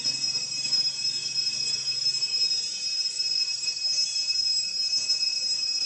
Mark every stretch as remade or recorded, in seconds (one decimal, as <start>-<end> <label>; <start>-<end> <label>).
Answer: 0.0-5.9 recorded